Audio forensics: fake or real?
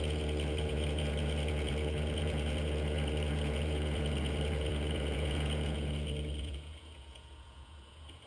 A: fake